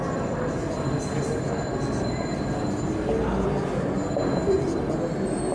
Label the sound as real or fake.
real